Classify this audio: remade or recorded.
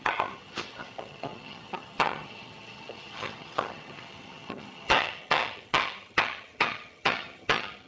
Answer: remade